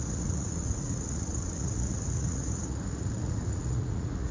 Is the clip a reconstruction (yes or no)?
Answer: yes